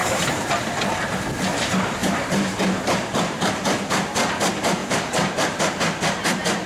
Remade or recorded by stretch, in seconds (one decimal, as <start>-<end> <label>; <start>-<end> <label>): 0.0-0.7 remade; 0.7-2.0 recorded; 2.0-3.5 remade; 3.5-4.8 recorded; 4.8-5.8 remade; 5.8-6.7 recorded